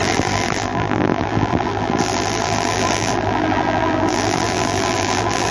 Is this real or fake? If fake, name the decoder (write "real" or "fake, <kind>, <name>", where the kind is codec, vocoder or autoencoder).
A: fake, vocoder, BigVGAN v2